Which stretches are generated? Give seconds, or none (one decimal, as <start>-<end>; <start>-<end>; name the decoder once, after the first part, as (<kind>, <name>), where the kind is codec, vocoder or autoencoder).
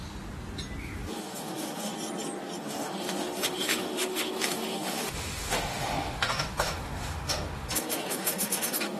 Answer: 0.8-1.9 (autoencoder, DAC-VAE); 2.6-9.0